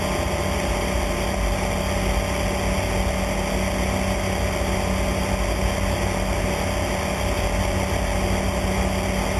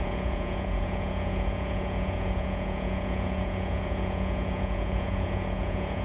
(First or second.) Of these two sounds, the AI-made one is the second